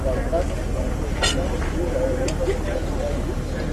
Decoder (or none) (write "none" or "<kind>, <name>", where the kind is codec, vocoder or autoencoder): none